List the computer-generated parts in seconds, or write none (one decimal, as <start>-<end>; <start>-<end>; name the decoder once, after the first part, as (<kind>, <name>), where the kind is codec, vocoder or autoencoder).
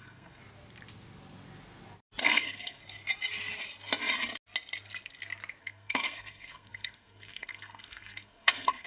0.0-0.4 (codec, SNAC); 2.2-2.8; 5.6-8.9